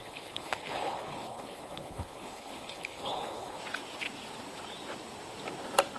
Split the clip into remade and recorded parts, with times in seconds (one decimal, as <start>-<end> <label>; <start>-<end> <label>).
0.0-3.6 remade; 3.6-6.0 recorded